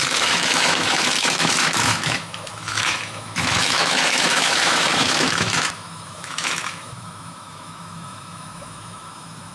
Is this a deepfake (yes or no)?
yes